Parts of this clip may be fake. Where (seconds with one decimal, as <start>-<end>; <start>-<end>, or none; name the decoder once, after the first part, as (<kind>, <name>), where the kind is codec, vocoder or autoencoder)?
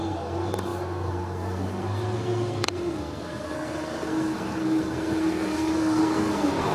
0.0-6.7 (codec, SNAC)